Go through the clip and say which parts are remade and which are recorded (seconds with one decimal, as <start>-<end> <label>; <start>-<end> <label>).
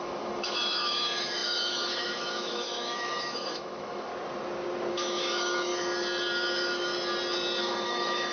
0.0-4.1 remade; 4.1-4.9 recorded; 4.9-5.7 remade; 5.7-7.6 recorded; 7.6-8.3 remade